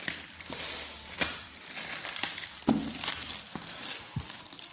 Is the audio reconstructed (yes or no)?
no